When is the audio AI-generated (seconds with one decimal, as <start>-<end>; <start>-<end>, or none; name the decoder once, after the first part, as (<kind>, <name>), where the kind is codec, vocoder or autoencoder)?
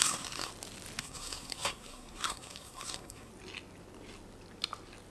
0.0-0.5 (codec, SNAC); 1.0-3.3